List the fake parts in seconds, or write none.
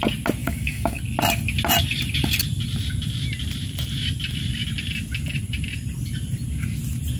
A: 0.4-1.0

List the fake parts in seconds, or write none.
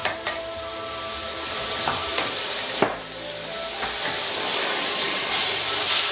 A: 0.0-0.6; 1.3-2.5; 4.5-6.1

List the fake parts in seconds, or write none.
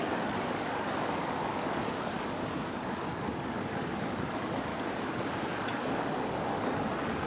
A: 0.0-4.7; 5.5-7.3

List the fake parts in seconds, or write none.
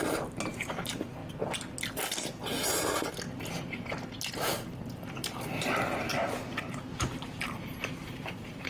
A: 0.0-1.2; 4.3-8.7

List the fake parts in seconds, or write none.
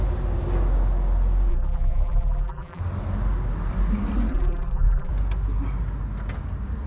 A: 1.5-2.8; 4.3-5.1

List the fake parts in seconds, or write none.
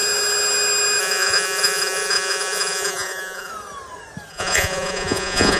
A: 1.0-3.5; 4.3-5.6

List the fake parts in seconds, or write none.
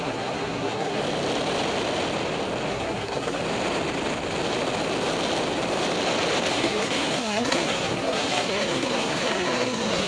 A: 0.0-1.0; 2.7-3.4; 6.5-10.1